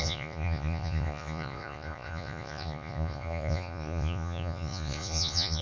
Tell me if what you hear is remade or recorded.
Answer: remade